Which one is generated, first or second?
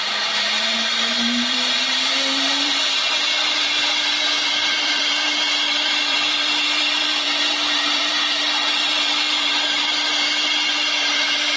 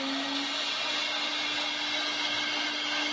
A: first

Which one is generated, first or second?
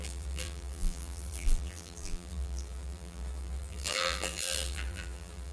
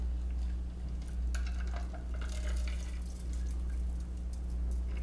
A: first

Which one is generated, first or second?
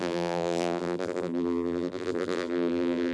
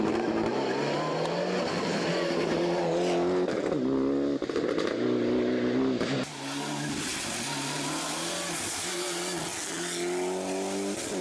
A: first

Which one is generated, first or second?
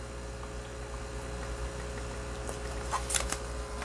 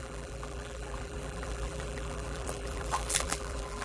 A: second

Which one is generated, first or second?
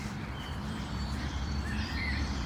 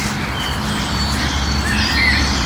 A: first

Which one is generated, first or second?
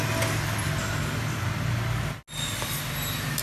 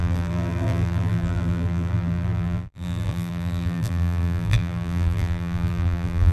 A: second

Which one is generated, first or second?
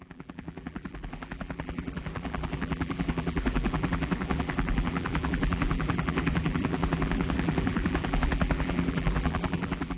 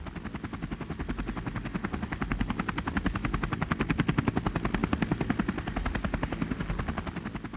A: first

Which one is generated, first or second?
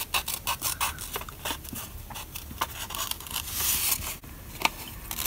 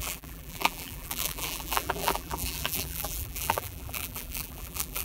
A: second